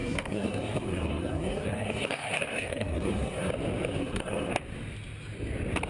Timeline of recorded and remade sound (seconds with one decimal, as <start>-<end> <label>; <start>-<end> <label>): 0.0-3.5 remade; 3.5-4.0 recorded; 4.0-4.5 remade; 4.5-5.9 recorded

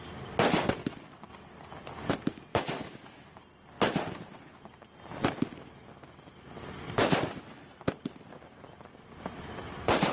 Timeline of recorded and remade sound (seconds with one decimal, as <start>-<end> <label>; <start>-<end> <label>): 0.0-2.5 recorded; 2.5-3.4 remade; 3.4-10.1 recorded

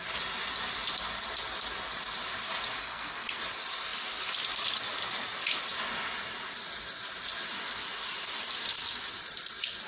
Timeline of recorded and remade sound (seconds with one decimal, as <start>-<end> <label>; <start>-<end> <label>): 0.0-2.8 recorded; 2.8-3.4 remade; 3.4-9.9 recorded

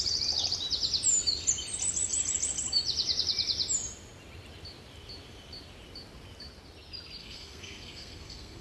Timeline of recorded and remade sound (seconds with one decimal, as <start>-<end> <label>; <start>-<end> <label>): 0.0-7.2 recorded; 7.2-8.6 remade

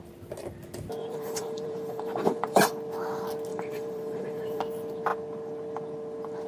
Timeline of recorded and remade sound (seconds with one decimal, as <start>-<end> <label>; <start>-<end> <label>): 0.0-1.0 recorded; 1.0-2.7 remade; 2.7-3.5 recorded; 3.5-4.6 remade; 4.6-6.5 recorded

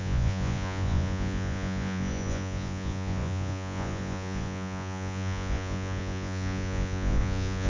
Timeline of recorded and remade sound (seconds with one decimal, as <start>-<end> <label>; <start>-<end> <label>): 0.0-7.7 remade

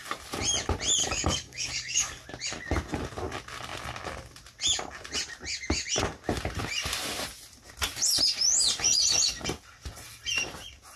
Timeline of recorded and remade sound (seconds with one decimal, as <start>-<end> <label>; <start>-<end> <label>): 0.0-1.0 recorded; 1.0-2.2 remade; 2.2-11.0 recorded

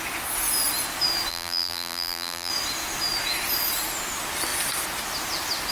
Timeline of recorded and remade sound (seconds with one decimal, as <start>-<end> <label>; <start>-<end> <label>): 0.0-1.3 recorded; 1.3-2.5 remade; 2.5-5.7 recorded